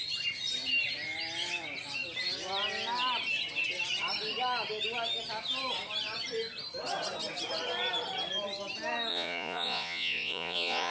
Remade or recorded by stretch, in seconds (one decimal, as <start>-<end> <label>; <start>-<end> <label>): 0.0-9.1 recorded; 9.1-10.9 remade